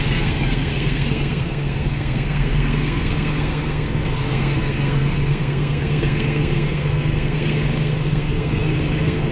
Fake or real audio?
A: fake